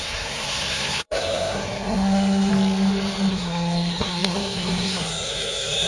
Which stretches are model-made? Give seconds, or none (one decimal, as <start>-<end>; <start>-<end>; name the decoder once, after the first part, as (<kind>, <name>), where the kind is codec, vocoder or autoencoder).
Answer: 0.0-2.5 (codec, SNAC); 3.3-5.9